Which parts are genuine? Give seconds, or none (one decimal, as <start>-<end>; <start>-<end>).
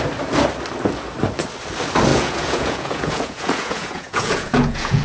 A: 0.0-2.1